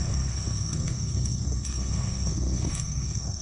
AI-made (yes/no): yes